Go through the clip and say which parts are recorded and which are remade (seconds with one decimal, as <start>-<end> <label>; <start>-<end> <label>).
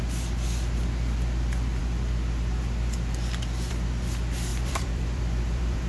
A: 0.0-4.5 recorded; 4.5-5.9 remade